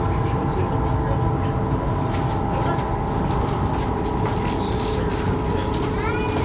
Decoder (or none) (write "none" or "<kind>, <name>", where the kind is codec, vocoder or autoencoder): none